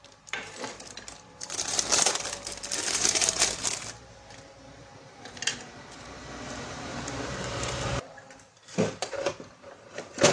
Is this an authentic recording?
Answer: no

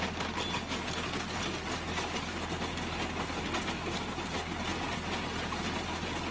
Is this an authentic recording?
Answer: yes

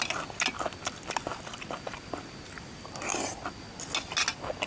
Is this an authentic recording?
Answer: yes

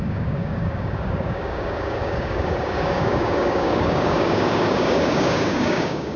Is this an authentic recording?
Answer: no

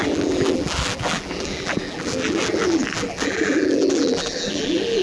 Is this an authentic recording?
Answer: no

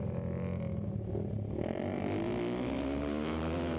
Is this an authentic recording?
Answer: yes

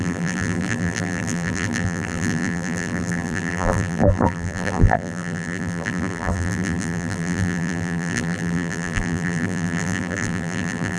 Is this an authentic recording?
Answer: no